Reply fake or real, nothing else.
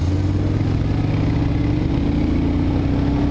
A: real